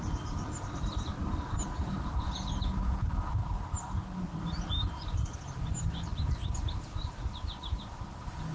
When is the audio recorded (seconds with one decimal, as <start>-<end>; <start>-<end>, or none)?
0.0-8.5